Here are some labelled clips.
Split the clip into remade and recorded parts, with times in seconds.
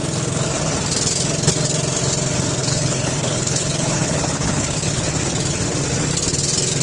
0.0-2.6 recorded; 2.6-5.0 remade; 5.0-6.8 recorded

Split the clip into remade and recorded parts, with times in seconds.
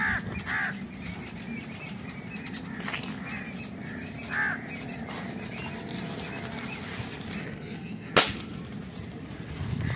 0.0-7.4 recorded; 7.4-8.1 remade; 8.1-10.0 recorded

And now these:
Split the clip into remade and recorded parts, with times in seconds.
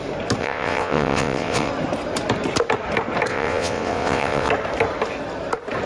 0.0-0.4 recorded; 0.4-1.7 remade; 1.7-3.3 recorded; 3.3-4.5 remade; 4.5-5.9 recorded